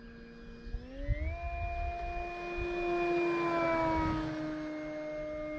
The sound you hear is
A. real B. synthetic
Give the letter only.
A